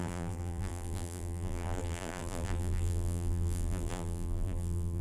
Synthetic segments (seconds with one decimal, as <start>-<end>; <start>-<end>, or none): 0.0-5.0